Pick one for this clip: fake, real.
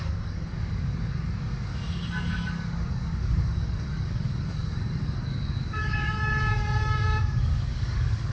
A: fake